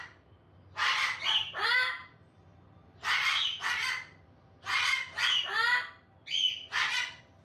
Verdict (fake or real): real